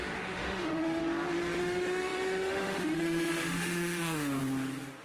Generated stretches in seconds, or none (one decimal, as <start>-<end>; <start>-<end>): 0.0-1.0; 1.6-4.4